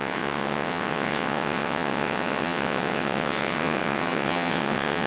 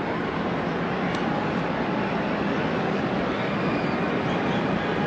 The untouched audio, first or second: second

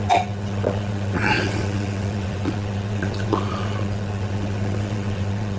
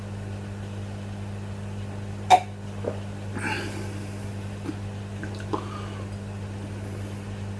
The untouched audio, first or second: second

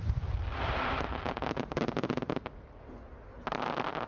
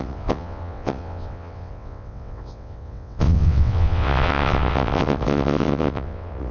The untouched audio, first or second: first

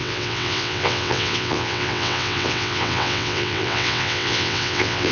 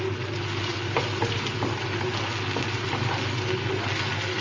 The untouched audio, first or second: second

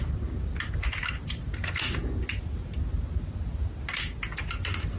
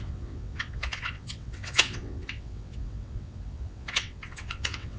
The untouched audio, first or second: first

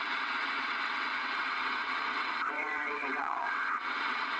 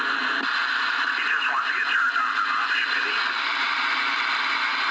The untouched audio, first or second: second